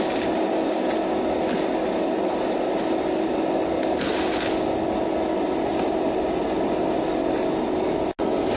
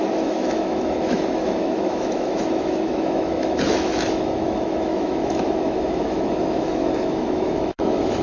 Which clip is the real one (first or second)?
first